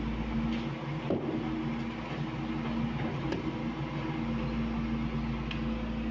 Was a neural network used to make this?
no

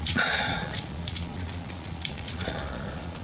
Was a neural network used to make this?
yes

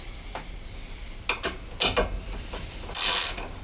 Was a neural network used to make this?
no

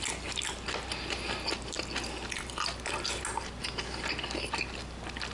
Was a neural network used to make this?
no